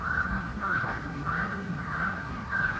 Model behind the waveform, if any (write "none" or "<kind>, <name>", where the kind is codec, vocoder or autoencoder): codec, SNAC